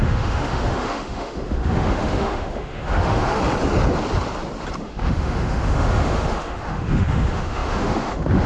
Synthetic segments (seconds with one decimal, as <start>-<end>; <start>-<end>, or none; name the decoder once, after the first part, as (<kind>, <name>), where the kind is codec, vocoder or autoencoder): 0.0-3.4 (autoencoder, DAC-VAE); 4.8-8.5